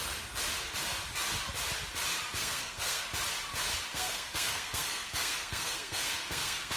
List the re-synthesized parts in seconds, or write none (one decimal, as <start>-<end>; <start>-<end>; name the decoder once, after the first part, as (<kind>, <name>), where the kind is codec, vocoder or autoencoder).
2.4-3.0 (codec, SNAC); 3.9-6.8